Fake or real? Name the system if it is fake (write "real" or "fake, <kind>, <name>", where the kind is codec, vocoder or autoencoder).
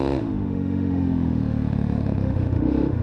fake, autoencoder, DAC-VAE